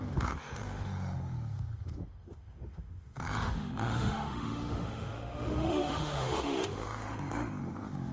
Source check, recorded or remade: remade